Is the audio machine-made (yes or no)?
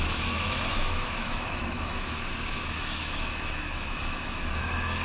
yes